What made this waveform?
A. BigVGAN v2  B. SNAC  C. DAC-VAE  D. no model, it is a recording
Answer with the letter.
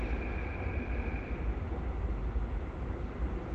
D